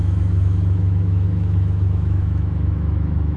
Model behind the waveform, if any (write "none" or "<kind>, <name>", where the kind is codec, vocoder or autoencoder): autoencoder, DAC-VAE